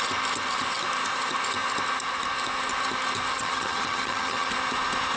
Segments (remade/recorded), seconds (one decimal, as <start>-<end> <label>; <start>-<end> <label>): 0.0-3.3 recorded; 3.3-4.5 remade; 4.5-5.2 recorded